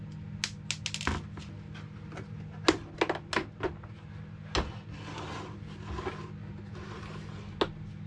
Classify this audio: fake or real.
real